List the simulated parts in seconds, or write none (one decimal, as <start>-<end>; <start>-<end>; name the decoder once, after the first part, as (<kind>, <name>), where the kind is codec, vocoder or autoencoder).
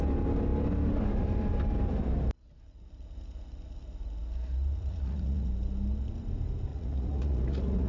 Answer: 4.7-5.5 (vocoder, Vocos); 6.7-7.9